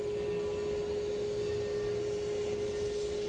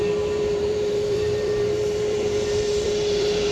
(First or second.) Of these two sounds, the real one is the first